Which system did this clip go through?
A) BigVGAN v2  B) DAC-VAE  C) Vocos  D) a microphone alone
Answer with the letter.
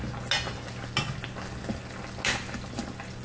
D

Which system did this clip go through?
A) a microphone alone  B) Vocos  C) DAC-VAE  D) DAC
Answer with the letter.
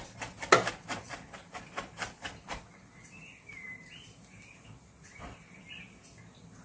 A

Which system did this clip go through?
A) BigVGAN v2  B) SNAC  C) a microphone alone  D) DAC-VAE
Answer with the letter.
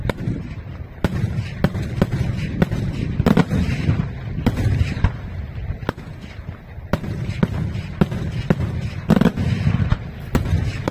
C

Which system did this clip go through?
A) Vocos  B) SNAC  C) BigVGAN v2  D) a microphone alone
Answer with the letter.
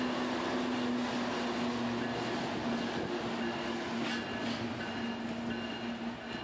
D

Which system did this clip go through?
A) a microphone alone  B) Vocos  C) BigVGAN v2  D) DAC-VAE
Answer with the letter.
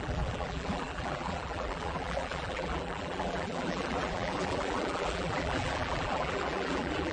C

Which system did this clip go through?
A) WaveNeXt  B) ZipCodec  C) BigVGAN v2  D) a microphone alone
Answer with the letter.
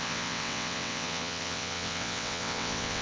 A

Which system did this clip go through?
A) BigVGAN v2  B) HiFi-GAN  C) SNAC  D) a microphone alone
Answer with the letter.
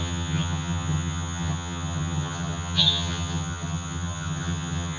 B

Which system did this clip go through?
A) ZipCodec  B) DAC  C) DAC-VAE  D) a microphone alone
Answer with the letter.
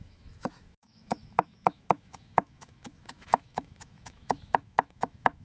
C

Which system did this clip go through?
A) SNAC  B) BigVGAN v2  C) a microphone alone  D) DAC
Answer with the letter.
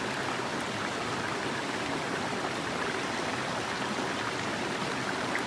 C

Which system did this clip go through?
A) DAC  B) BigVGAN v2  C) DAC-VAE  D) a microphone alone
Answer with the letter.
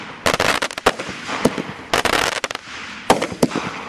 D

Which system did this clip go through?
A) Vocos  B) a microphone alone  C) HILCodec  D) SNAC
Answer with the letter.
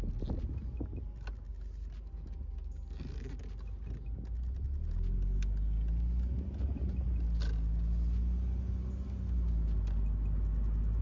B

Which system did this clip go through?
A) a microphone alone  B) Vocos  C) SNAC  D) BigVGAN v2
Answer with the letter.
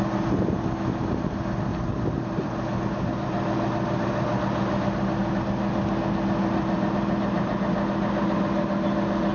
A